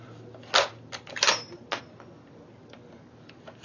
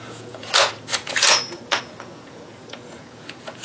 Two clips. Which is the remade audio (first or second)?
second